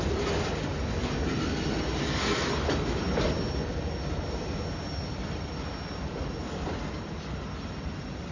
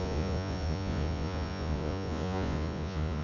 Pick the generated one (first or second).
second